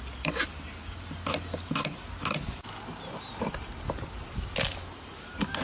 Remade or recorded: recorded